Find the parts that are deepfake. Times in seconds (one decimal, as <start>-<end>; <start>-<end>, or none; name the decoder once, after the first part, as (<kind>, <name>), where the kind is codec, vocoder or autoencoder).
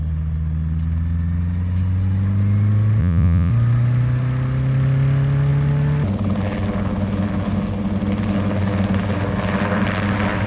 3.0-3.5 (vocoder, Vocos)